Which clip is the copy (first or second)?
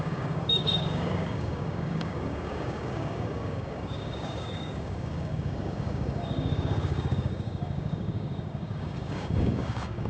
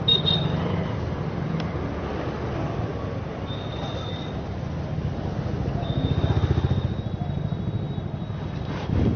first